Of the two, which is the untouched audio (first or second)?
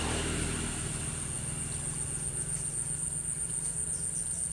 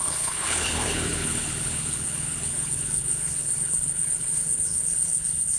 first